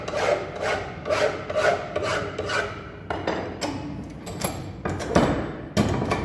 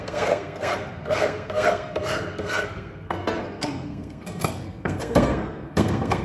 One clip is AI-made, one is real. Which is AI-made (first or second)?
second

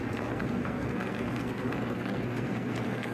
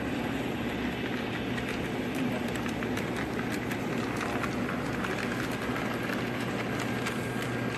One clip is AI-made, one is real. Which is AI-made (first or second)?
first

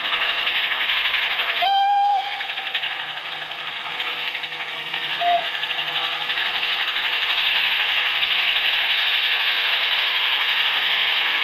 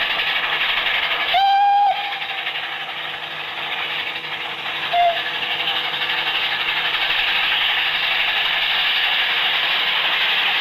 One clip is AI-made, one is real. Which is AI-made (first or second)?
first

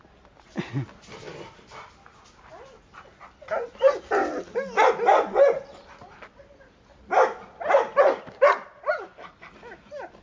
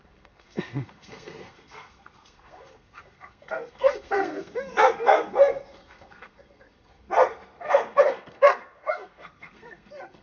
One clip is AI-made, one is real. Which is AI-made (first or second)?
second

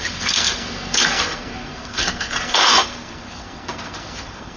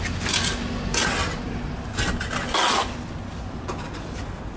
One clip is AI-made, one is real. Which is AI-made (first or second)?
first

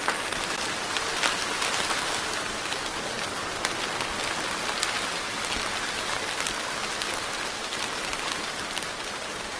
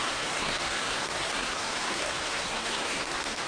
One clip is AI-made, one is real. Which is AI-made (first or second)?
second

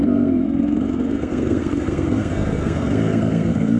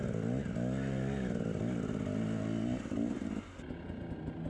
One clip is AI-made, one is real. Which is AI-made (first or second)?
first